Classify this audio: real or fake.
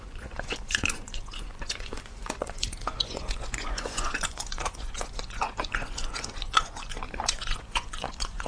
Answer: fake